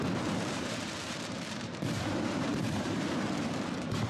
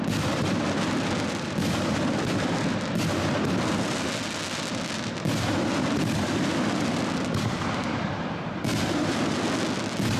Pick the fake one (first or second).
first